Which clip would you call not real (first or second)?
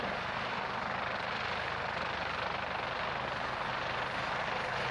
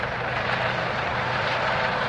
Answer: second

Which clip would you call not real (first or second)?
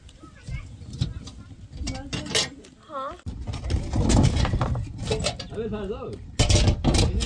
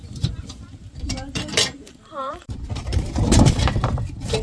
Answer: second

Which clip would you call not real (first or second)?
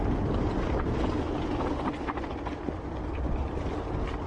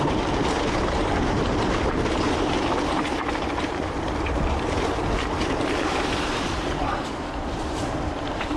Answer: second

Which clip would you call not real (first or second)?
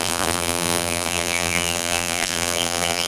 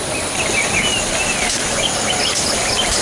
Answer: first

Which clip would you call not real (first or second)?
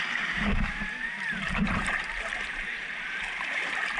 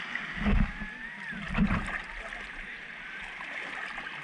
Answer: first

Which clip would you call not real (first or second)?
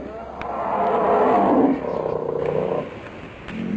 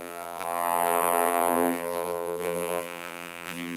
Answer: second